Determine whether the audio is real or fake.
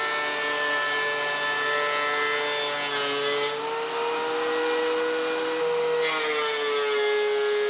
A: real